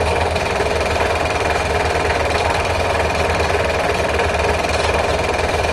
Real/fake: real